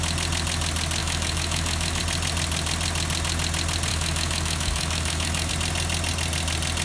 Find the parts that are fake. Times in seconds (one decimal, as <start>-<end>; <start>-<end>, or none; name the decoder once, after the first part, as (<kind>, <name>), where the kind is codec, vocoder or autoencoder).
1.0-2.0 (autoencoder, DAC-VAE); 3.9-5.5